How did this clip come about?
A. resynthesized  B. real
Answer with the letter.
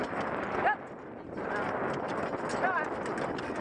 B